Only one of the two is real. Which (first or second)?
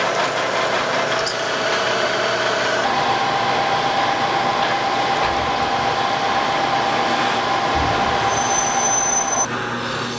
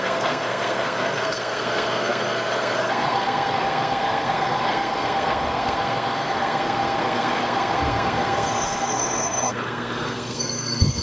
first